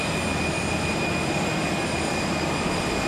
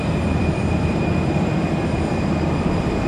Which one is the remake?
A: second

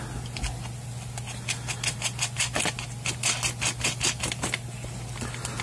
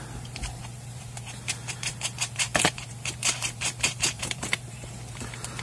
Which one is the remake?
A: second